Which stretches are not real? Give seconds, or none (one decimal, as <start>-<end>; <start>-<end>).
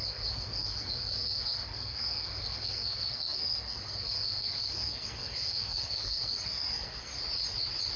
0.0-7.1